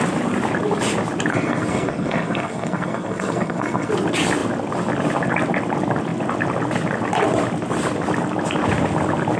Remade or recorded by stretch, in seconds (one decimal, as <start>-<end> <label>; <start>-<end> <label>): 0.0-1.3 recorded; 1.3-3.9 remade; 3.9-9.4 recorded